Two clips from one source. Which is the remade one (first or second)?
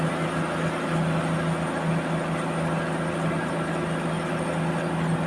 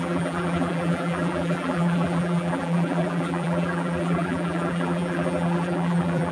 second